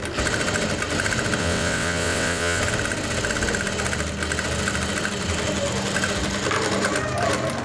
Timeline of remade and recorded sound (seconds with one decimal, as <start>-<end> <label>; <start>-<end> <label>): 0.0-1.4 recorded; 1.4-2.6 remade; 2.6-7.6 recorded